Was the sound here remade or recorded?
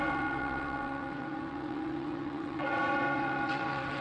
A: remade